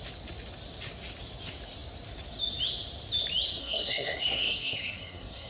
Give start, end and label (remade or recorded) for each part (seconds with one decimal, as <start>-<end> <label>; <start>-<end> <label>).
0.0-3.6 recorded; 3.6-5.5 remade